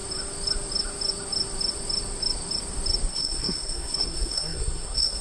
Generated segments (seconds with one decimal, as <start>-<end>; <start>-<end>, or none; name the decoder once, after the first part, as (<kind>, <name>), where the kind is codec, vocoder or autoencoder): 3.1-5.2 (codec, SNAC)